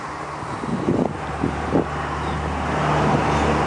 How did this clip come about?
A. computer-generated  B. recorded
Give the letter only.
B